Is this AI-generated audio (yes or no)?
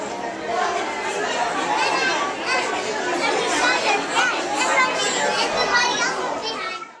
no